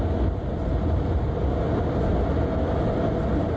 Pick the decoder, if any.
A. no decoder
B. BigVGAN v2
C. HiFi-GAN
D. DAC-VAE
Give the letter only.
A